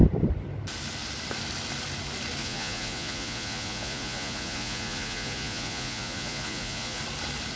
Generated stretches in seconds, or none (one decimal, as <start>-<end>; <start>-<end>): 2.4-7.0